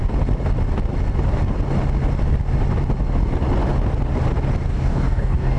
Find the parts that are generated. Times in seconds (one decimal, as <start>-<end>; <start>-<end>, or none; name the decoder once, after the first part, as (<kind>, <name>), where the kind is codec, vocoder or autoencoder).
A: 4.7-5.6 (codec, DAC)